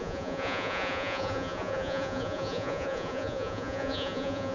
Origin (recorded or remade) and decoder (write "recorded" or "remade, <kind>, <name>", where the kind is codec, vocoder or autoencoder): remade, vocoder, Vocos